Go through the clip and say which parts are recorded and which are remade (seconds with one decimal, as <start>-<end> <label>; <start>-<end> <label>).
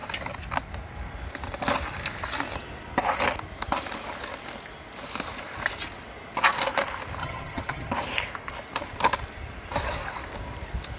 0.0-7.2 recorded; 7.2-7.9 remade; 7.9-11.0 recorded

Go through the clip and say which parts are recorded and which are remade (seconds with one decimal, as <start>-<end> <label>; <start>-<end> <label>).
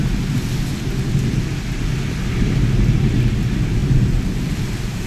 0.0-5.1 recorded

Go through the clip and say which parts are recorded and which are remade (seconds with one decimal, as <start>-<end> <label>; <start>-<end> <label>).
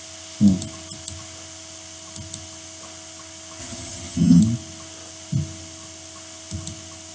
0.0-3.6 recorded; 3.6-4.4 remade; 4.4-7.1 recorded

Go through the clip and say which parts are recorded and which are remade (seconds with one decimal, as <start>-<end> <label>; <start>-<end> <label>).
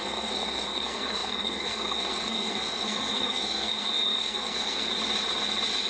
0.0-4.9 remade; 4.9-5.9 recorded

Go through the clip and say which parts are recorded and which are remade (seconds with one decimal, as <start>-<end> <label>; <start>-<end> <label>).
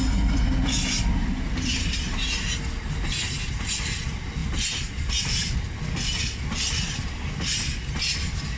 0.0-8.6 recorded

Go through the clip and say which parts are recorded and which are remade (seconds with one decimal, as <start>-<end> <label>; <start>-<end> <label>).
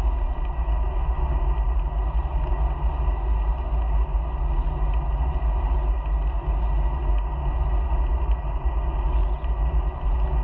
0.0-8.1 recorded; 8.1-8.7 remade; 8.7-9.2 recorded; 9.2-9.7 remade; 9.7-10.4 recorded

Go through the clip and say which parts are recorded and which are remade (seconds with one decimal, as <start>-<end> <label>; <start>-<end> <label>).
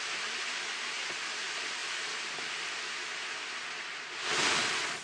0.0-5.0 recorded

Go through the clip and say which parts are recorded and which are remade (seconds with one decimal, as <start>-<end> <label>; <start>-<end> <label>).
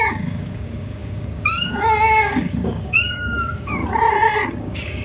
0.0-3.8 remade; 3.8-4.6 recorded; 4.6-5.0 remade